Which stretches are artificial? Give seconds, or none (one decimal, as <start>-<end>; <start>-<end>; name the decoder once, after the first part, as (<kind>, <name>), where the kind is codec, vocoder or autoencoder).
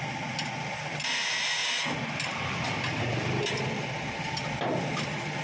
none